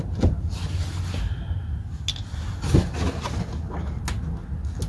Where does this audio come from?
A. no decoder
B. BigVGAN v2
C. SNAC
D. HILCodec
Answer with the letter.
A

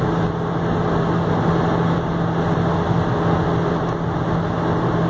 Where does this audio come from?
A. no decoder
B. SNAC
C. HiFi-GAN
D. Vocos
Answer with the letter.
A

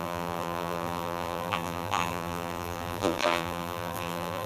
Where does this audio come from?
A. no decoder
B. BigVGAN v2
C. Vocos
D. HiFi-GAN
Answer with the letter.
B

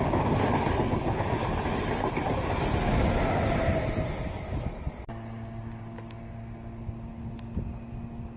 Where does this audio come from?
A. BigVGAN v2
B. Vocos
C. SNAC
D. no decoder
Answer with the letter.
D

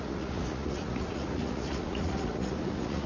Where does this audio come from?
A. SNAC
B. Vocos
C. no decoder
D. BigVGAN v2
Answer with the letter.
B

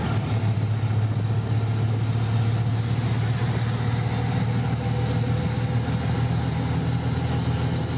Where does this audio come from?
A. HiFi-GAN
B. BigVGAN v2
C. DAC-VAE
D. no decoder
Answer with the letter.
D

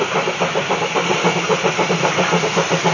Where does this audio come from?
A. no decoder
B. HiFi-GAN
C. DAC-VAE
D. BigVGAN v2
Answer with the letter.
D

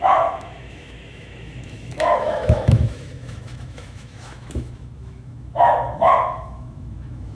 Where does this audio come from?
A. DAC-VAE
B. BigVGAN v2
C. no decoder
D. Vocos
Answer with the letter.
A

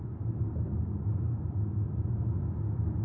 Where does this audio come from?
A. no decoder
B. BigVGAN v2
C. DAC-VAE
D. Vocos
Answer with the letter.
A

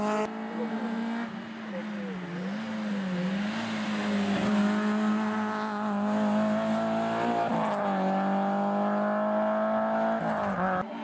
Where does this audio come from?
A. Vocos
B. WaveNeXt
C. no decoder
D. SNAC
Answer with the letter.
C